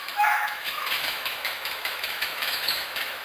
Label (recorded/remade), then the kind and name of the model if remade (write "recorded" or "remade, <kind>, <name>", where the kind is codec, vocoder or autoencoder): remade, autoencoder, DAC-VAE